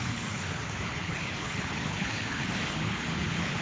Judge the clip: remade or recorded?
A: remade